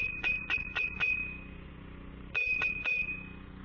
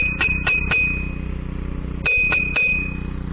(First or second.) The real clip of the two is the second